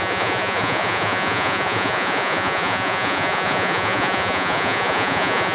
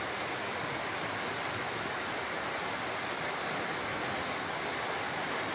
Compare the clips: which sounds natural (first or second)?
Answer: second